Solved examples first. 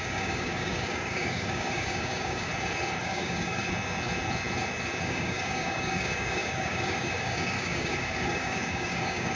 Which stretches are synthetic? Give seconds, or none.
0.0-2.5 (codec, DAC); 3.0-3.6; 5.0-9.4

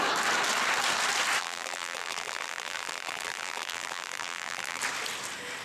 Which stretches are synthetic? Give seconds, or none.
1.4-4.8 (vocoder, BigVGAN v2)

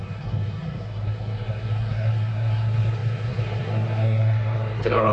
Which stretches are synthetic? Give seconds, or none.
0.0-5.1 (codec, SNAC)